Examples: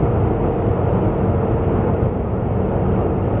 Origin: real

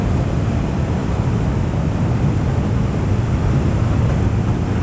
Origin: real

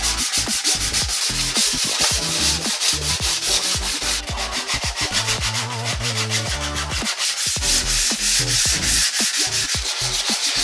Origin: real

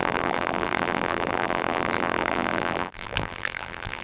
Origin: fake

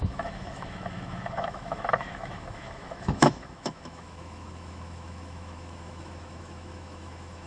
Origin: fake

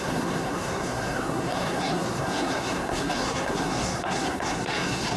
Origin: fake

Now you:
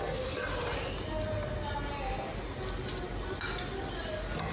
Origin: real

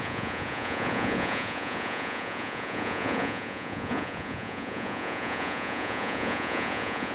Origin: fake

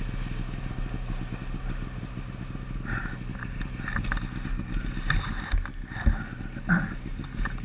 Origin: real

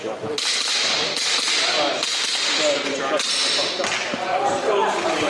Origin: real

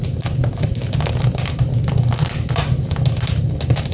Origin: real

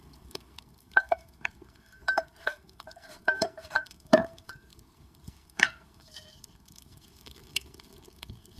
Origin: fake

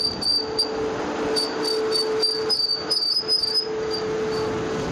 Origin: real